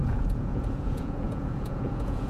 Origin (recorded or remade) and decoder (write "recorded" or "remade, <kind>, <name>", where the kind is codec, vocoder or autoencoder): remade, vocoder, Vocos